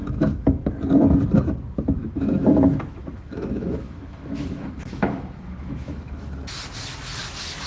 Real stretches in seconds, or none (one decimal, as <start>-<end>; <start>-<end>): 0.7-2.0; 6.2-7.7